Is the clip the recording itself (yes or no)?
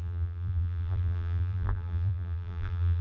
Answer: no